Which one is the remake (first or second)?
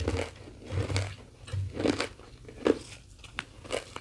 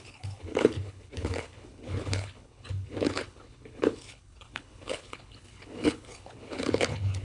second